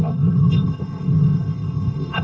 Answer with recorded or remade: remade